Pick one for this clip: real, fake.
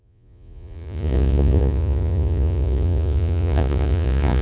fake